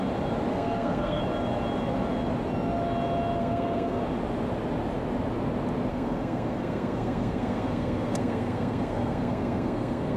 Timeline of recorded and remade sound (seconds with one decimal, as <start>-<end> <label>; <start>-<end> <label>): 0.0-0.5 recorded; 0.5-1.2 remade; 1.2-3.4 recorded; 3.4-4.0 remade; 4.0-5.9 recorded; 5.9-10.2 remade